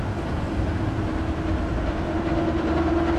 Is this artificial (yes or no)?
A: no